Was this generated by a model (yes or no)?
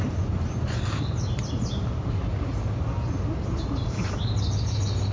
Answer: yes